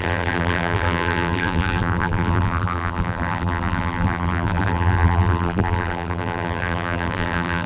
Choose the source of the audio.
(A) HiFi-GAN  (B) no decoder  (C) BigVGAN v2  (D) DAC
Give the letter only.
C